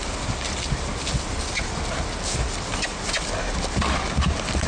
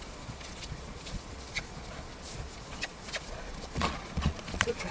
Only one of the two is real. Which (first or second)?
first